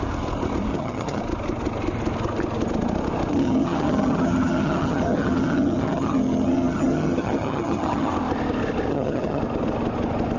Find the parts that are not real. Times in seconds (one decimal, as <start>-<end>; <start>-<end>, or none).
0.7-1.2; 3.3-8.1; 8.9-9.4